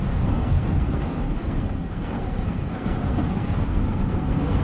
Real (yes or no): no